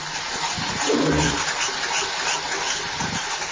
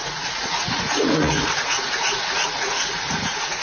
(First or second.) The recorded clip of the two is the first